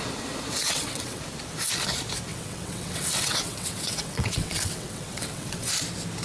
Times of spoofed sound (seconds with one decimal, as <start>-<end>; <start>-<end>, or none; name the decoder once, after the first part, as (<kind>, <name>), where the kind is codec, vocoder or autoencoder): 0.6-1.2 (vocoder, WaveNeXt); 2.3-5.7